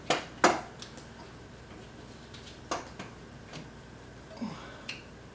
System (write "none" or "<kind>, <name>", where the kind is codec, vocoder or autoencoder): none